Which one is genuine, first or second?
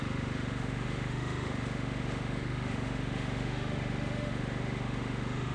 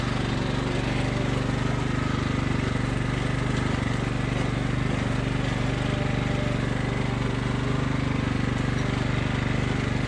second